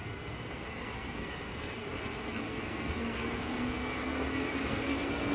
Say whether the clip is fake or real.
fake